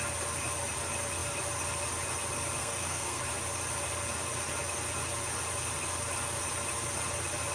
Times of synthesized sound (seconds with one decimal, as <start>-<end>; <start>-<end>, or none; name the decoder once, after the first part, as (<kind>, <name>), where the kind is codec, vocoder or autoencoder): 2.6-3.2 (codec, SNAC)